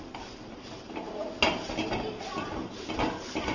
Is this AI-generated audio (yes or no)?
no